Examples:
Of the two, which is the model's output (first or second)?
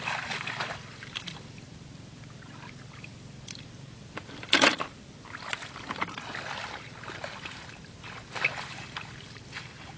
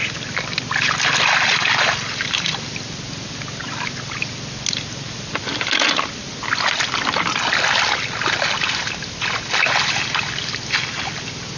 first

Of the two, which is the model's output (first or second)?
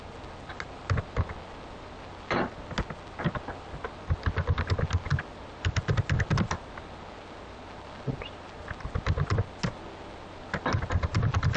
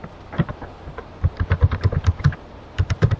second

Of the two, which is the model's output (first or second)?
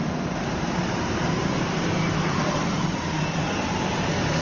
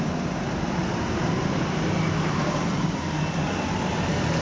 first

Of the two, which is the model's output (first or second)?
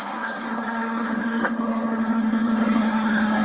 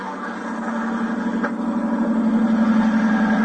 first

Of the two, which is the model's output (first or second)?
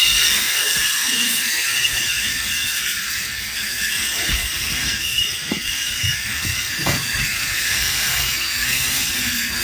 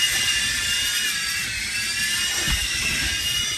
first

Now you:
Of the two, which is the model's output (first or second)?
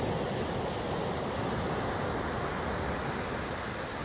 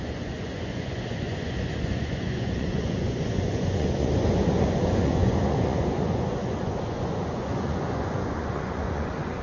second